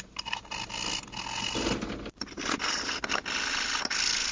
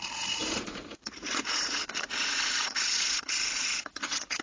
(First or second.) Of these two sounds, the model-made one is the second